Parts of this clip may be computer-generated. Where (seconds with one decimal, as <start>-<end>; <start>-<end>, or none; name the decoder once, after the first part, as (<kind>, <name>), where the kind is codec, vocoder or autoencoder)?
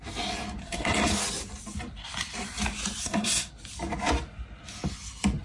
0.6-1.1 (codec, SNAC); 3.0-3.5